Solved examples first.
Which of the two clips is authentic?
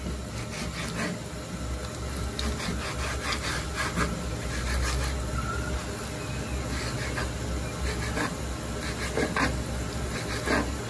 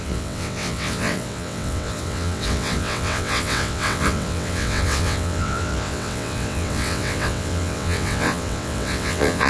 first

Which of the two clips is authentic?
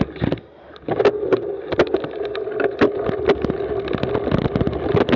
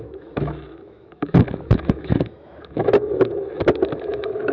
first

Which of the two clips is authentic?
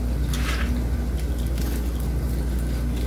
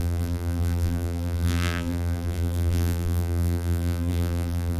first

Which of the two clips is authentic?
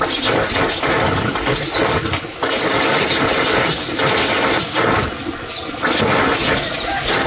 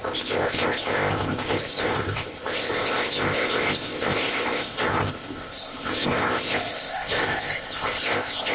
first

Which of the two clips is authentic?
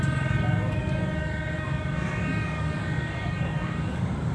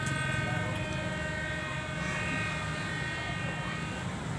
second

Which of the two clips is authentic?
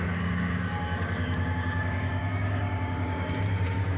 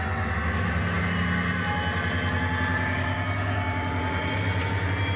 second